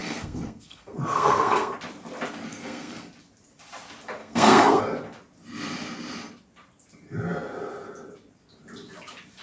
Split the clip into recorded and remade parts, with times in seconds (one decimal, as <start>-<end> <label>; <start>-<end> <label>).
0.0-1.7 remade; 1.7-2.5 recorded; 2.5-3.1 remade; 3.1-4.2 recorded; 4.2-4.8 remade; 4.8-9.4 recorded